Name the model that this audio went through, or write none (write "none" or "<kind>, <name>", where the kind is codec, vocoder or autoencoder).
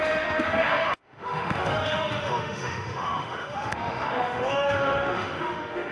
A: autoencoder, DAC-VAE